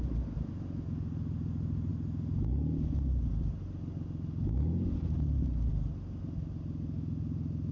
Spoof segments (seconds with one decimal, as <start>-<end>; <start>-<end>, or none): none